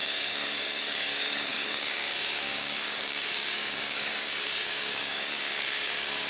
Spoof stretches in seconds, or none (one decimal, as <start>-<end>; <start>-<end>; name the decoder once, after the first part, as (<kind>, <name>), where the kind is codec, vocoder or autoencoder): 0.0-6.3 (codec, DAC)